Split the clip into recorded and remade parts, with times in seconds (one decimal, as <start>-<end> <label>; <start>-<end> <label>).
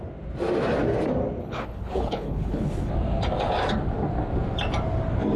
0.0-1.4 recorded; 1.4-2.9 remade; 2.9-5.4 recorded